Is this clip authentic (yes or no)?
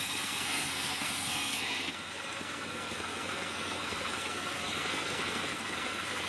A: no